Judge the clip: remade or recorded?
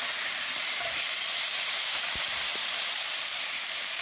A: remade